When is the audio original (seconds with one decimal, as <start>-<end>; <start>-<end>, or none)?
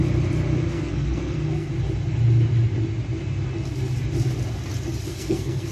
0.0-0.7; 1.7-5.1